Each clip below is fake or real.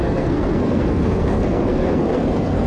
fake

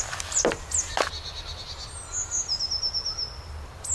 real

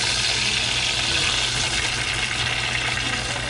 real